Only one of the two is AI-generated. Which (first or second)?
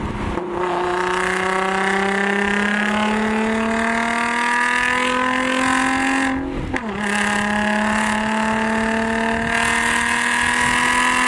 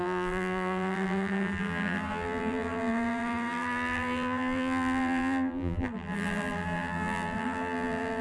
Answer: second